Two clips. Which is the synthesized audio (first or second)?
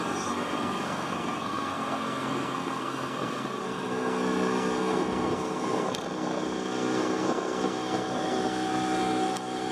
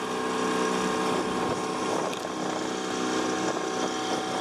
first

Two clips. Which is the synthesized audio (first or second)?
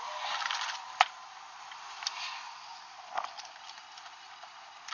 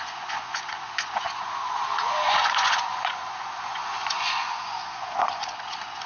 second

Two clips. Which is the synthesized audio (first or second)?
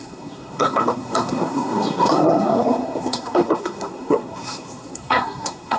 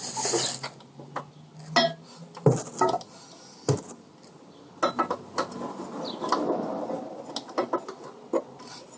first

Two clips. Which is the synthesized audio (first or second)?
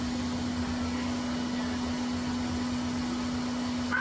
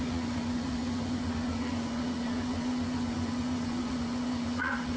second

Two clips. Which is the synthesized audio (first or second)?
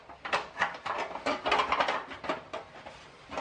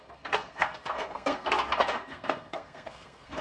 second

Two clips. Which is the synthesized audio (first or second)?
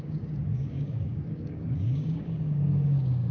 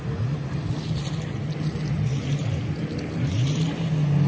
first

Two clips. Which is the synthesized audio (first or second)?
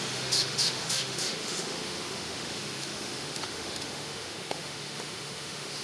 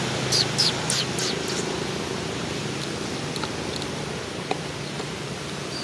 first